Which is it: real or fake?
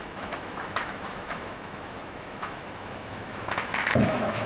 fake